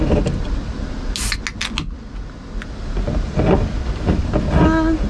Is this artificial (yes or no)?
no